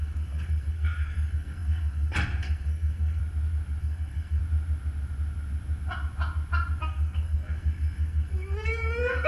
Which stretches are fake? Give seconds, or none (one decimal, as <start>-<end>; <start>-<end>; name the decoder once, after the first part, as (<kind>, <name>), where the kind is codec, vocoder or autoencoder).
0.0-3.2 (codec, SNAC); 3.8-4.4; 6.8-9.3